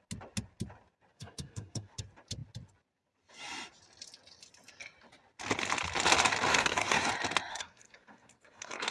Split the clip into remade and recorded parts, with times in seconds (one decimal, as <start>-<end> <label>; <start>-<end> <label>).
0.0-1.1 recorded; 1.1-2.0 remade; 2.0-6.5 recorded; 6.5-7.1 remade; 7.1-7.5 recorded; 7.5-8.9 remade